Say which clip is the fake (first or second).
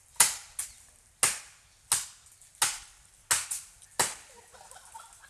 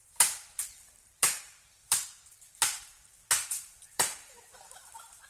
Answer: second